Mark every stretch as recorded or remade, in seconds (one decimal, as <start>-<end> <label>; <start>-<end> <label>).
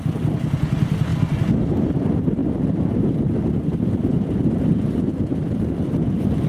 0.0-6.5 recorded